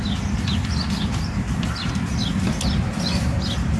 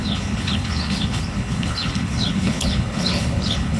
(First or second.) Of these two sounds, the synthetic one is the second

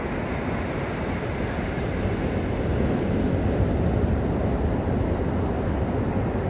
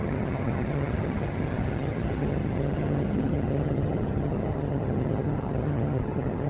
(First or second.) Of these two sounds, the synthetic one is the second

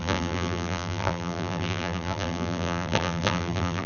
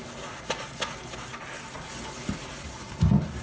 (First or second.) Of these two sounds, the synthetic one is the first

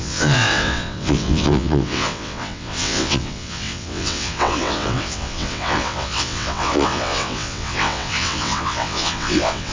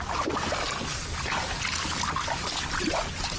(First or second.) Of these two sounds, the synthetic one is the first